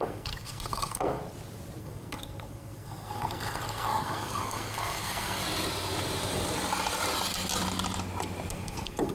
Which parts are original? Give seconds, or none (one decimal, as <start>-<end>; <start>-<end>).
1.2-1.8; 5.4-8.5